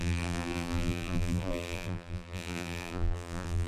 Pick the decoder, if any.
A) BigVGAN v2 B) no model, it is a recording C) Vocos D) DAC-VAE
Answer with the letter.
A